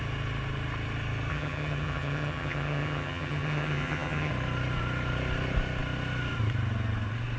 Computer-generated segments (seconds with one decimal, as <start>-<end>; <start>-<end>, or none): 1.3-4.3